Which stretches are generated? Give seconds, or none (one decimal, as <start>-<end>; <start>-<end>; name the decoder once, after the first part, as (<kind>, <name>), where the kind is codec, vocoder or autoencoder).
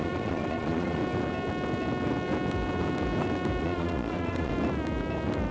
0.0-1.0 (vocoder, Vocos); 3.6-4.5